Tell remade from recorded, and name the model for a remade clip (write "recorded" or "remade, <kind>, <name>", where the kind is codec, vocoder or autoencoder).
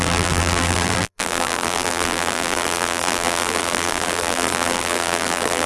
remade, vocoder, BigVGAN v2